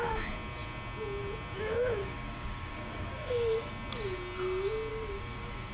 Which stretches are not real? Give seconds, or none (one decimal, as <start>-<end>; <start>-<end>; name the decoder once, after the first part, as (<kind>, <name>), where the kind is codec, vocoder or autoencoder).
2.0-3.7 (codec, DAC); 4.9-5.7